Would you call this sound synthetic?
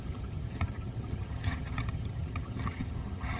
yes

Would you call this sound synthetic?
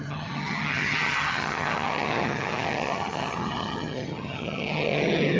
yes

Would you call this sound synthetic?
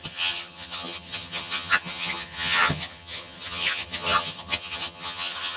yes